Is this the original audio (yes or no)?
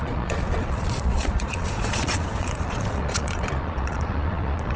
no